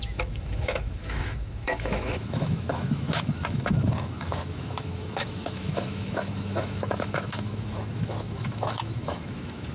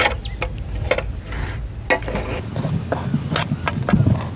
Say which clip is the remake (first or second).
first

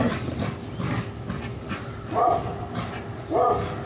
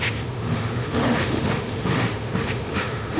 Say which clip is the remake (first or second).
second